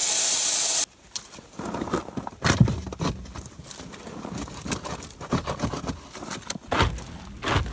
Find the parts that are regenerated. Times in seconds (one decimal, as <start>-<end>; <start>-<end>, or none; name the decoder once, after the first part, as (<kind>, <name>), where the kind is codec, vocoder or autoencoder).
none